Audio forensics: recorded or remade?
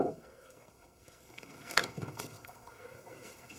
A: remade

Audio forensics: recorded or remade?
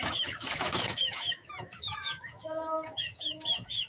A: remade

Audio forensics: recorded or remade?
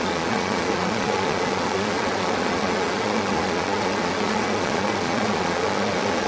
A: remade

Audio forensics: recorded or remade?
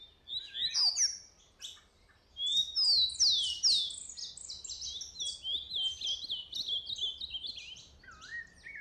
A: recorded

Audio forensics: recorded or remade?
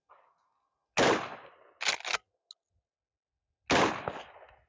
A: recorded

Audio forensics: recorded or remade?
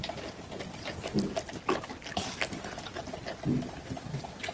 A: recorded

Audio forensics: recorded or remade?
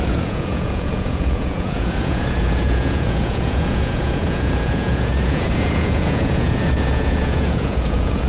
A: remade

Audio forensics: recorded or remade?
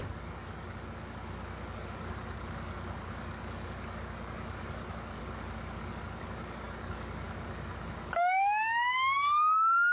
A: remade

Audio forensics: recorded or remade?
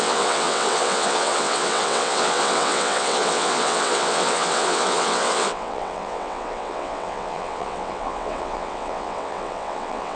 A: remade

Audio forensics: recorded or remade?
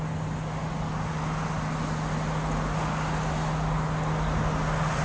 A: recorded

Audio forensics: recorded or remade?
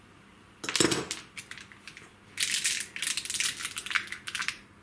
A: recorded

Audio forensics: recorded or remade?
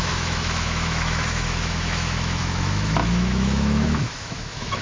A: remade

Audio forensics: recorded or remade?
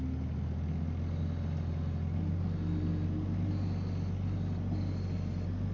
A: recorded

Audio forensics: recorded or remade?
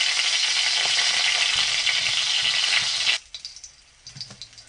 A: recorded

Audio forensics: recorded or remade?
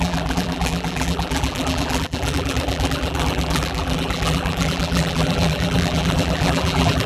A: remade